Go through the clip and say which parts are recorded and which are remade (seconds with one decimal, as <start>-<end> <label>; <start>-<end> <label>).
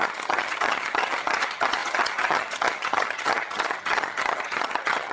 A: 0.0-5.1 remade